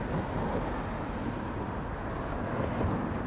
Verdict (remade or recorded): recorded